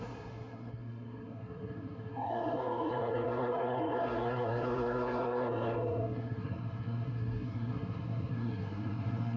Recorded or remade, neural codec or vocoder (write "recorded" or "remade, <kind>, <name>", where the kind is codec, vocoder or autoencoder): remade, codec, SNAC